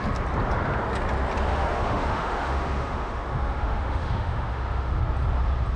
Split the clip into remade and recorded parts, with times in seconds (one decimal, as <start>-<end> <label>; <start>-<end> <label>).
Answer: 0.0-1.5 recorded; 1.5-5.0 remade; 5.0-5.8 recorded